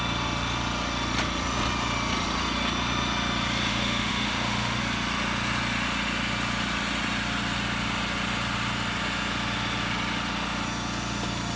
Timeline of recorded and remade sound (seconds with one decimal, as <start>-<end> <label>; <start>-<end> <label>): 0.0-3.7 recorded; 3.7-4.8 remade; 4.8-11.6 recorded